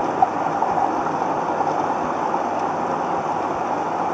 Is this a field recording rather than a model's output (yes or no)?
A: yes